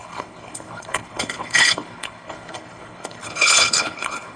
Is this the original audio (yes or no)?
no